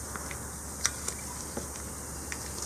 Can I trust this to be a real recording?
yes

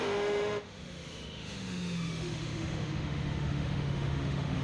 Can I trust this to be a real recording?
no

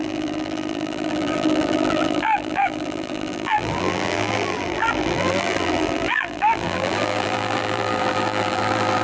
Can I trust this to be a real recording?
no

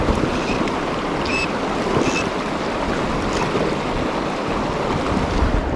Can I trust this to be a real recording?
yes